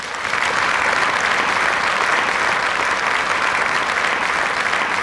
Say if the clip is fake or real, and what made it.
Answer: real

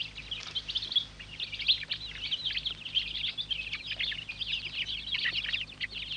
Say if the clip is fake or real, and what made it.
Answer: real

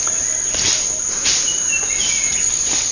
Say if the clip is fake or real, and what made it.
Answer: real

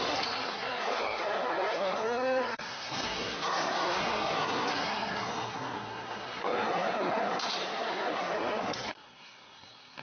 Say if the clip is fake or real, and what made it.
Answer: fake, codec, SNAC